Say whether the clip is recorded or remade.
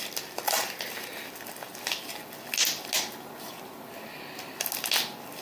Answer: recorded